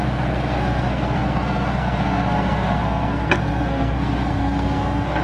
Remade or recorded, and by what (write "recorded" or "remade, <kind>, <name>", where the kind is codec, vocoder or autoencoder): remade, codec, SNAC